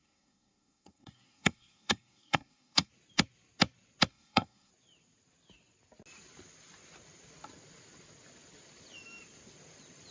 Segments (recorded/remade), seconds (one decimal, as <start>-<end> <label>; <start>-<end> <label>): 0.0-2.9 remade; 2.9-4.1 recorded; 4.1-4.7 remade; 4.7-10.1 recorded